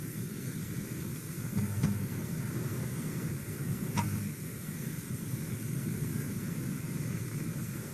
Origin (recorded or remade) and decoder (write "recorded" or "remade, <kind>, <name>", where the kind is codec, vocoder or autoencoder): remade, codec, SNAC